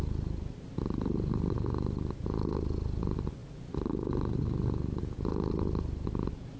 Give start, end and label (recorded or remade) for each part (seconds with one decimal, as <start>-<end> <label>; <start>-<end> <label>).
0.0-6.6 recorded